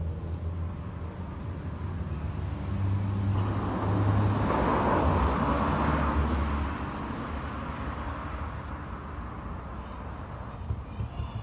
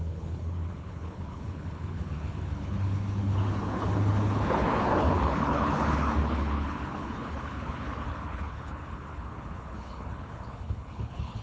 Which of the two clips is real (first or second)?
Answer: first